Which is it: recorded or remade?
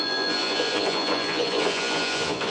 remade